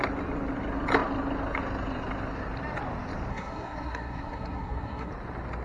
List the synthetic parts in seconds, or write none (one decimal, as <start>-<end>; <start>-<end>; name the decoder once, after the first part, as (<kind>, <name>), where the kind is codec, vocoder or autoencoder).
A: 3.3-5.1 (codec, SNAC)